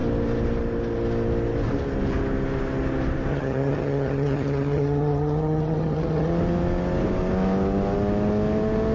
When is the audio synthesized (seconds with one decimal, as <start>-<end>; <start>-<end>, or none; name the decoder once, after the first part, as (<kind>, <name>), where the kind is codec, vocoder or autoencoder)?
3.3-6.3 (vocoder, HiFi-GAN)